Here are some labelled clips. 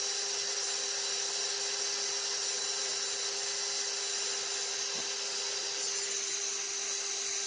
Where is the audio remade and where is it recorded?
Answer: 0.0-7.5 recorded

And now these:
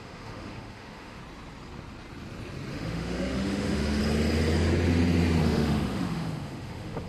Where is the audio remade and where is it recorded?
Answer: 0.0-1.2 remade; 1.2-2.7 recorded; 2.7-4.0 remade; 4.0-5.4 recorded; 5.4-7.1 remade

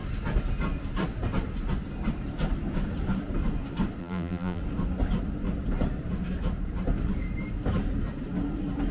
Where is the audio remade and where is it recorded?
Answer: 0.0-4.0 recorded; 4.0-4.6 remade; 4.6-8.9 recorded

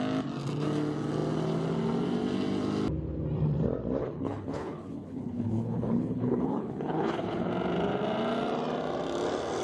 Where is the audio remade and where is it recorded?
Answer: 0.0-4.0 recorded; 4.0-7.5 remade; 7.5-9.6 recorded

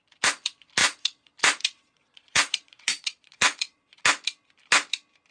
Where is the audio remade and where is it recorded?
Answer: 0.0-0.8 recorded; 0.8-4.0 remade; 4.0-5.3 recorded

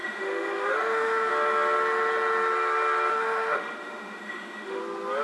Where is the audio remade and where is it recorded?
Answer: 0.0-1.3 remade; 1.3-3.1 recorded; 3.1-4.8 remade; 4.8-5.2 recorded